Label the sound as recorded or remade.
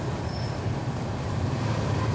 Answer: recorded